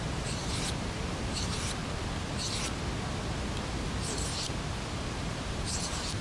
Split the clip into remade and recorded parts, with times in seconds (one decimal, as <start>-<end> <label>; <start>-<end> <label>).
0.0-1.8 remade; 1.8-3.7 recorded; 3.7-6.2 remade